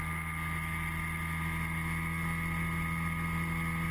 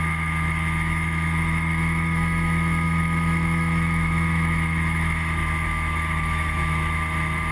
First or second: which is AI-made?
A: second